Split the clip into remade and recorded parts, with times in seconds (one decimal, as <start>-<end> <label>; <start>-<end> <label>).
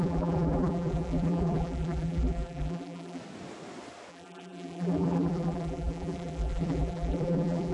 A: 0.0-3.2 remade; 3.2-4.1 recorded; 4.1-7.7 remade